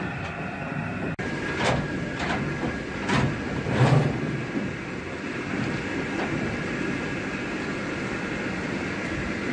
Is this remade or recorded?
remade